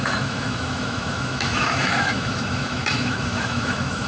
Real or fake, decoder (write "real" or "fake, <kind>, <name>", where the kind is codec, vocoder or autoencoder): fake, autoencoder, DAC-VAE